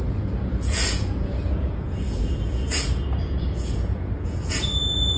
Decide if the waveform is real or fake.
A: fake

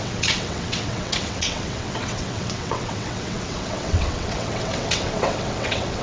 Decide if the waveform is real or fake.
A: fake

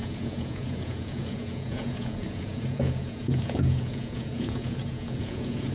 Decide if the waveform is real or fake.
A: fake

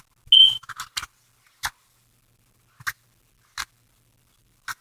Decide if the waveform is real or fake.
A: real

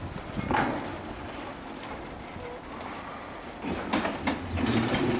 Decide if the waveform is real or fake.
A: real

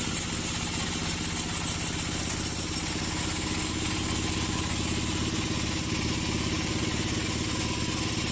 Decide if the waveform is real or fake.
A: real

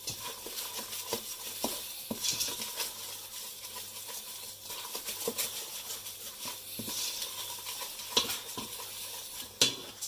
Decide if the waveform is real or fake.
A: real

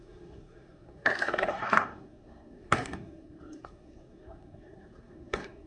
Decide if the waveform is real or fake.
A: fake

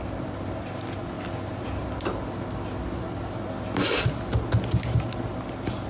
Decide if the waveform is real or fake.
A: real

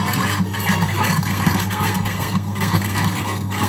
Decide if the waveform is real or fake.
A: fake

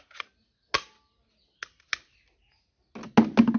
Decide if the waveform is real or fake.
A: real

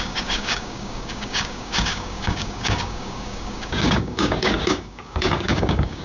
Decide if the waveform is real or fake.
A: fake